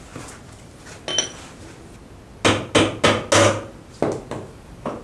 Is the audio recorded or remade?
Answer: recorded